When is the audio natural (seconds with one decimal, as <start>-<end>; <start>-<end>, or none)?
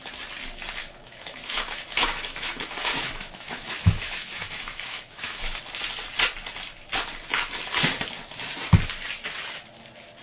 0.0-0.8; 5.6-10.2